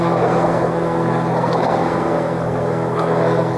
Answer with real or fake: fake